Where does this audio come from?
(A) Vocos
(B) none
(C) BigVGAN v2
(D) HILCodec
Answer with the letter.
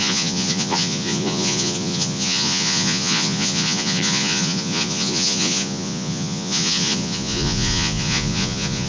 A